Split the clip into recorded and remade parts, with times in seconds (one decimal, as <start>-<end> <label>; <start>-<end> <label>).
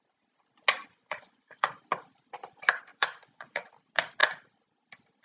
0.0-0.8 recorded; 0.8-1.8 remade; 1.8-2.9 recorded; 2.9-3.7 remade; 3.7-5.2 recorded